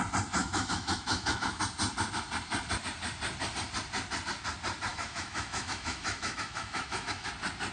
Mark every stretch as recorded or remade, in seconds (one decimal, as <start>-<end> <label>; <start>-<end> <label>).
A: 0.0-0.4 recorded; 0.4-1.6 remade; 1.6-4.9 recorded; 4.9-7.3 remade; 7.3-7.7 recorded